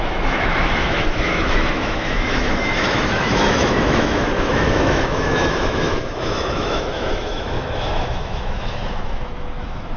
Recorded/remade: remade